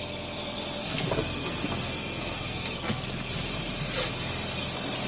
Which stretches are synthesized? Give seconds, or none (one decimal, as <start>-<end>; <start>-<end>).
0.8-3.1